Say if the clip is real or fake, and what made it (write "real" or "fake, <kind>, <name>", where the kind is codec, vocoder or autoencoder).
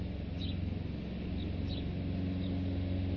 real